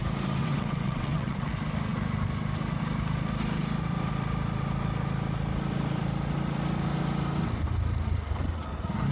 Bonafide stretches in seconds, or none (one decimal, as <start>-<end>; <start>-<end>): 0.0-0.4; 1.5-9.1